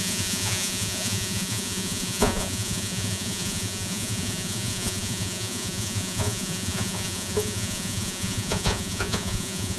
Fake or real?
fake